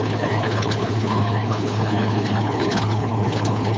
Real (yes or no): no